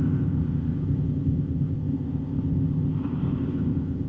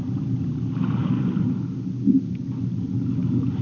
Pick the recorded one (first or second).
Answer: second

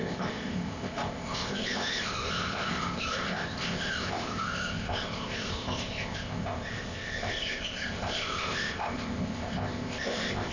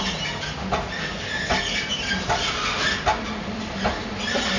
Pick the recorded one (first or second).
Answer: second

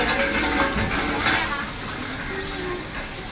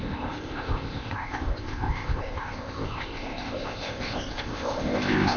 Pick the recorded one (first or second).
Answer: first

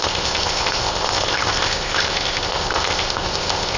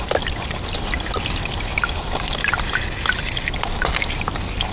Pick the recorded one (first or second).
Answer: second